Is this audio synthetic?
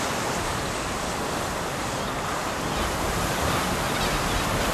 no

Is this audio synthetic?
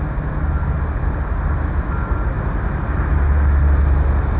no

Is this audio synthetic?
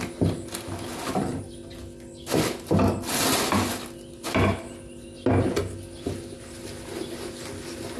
no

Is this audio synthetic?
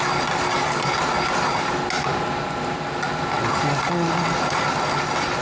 no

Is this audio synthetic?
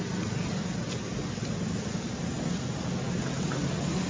no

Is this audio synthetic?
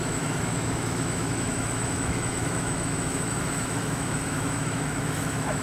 yes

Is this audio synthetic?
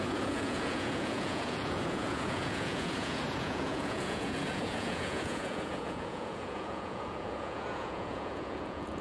yes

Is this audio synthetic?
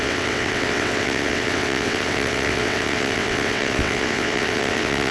yes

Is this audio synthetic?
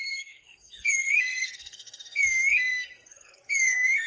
yes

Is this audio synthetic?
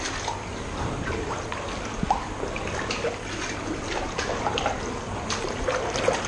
no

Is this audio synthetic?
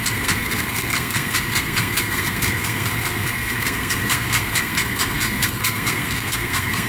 yes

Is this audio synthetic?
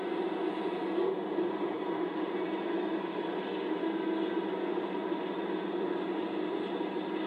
no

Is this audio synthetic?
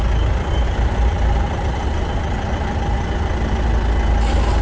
no